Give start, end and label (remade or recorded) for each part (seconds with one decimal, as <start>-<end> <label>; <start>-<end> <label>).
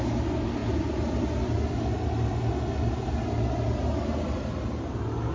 0.0-5.3 recorded